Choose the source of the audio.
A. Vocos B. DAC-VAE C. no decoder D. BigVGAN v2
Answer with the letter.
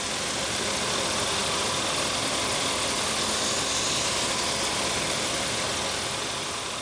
C